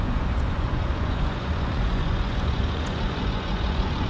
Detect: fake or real fake